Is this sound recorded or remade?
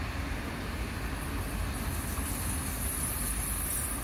recorded